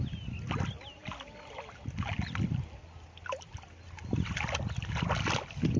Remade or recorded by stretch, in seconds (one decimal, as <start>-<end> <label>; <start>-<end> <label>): 0.0-5.8 recorded